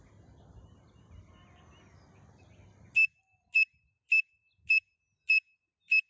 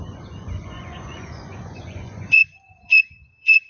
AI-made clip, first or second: second